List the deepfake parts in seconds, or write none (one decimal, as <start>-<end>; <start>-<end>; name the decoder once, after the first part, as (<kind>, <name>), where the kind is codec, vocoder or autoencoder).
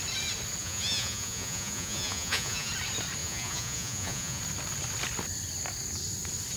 0.6-2.7 (vocoder, Vocos); 3.2-4.4